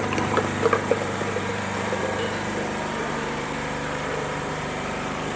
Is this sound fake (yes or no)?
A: yes